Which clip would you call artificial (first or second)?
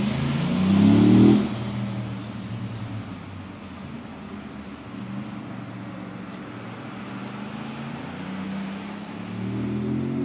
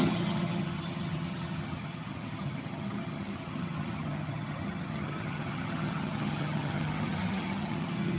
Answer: second